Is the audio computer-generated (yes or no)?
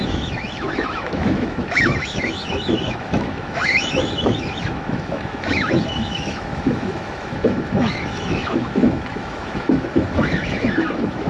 yes